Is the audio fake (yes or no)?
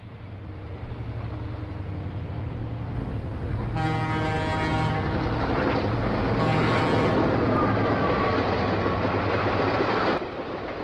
no